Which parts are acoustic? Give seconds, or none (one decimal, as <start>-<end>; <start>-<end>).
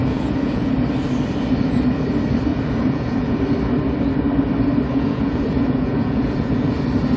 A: 0.7-2.5; 3.4-4.9; 6.7-7.2